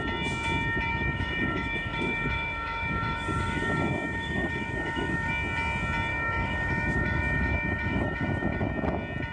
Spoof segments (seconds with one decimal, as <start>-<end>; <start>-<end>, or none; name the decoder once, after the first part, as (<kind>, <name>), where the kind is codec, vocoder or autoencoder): 0.9-5.3 (autoencoder, DAC-VAE); 6.1-8.7